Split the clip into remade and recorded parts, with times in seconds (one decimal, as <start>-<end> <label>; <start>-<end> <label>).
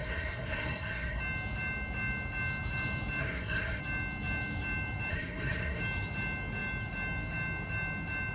0.0-1.2 remade; 1.2-3.2 recorded; 3.2-3.8 remade; 3.8-5.1 recorded; 5.1-5.8 remade; 5.8-8.3 recorded